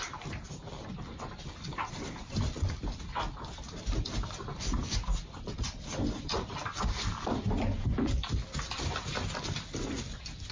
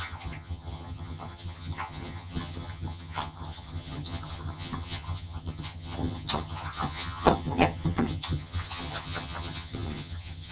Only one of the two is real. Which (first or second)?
first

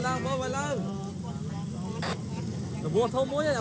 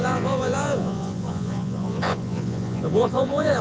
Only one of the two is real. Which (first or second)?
first